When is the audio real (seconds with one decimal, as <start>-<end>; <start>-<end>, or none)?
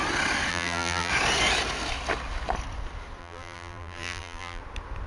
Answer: 0.0-0.5; 1.1-3.2; 4.6-5.1